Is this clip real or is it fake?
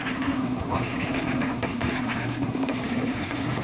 fake